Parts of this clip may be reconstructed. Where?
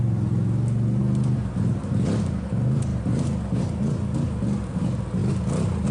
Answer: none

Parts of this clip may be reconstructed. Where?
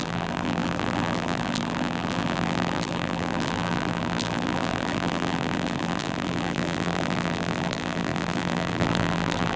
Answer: 0.0-9.6 (vocoder, BigVGAN v2)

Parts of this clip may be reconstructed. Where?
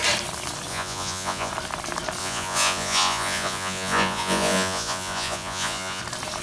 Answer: 0.7-1.5 (vocoder, Vocos); 2.2-6.0